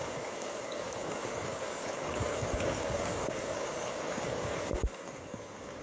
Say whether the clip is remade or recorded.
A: remade